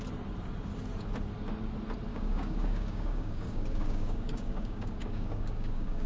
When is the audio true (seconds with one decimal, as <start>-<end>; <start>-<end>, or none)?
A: 0.0-2.1